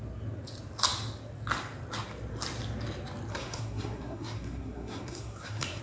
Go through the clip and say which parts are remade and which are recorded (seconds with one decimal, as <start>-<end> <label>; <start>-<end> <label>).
0.0-3.3 recorded; 3.3-5.8 remade